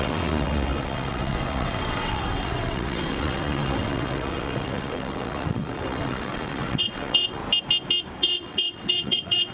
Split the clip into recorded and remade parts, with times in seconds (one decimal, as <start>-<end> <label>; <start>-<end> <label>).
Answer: 0.0-7.4 remade; 7.4-8.2 recorded; 8.2-9.5 remade